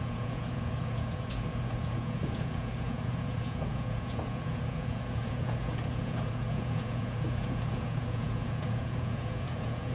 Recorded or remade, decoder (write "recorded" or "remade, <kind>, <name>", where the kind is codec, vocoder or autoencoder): remade, vocoder, Vocos